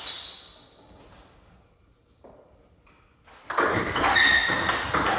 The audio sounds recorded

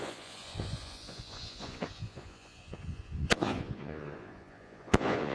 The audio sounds remade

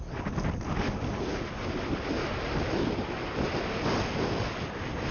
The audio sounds recorded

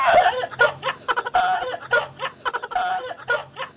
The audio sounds recorded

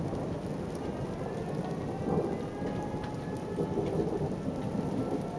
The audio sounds recorded